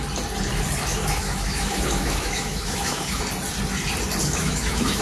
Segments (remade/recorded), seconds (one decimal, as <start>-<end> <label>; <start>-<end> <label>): 0.0-0.9 recorded; 0.9-3.2 remade; 3.2-4.2 recorded; 4.2-5.0 remade